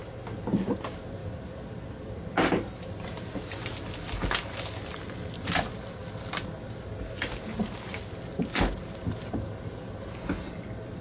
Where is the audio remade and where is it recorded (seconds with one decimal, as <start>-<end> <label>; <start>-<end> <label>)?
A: 0.0-1.2 recorded; 1.2-2.2 remade; 2.2-11.0 recorded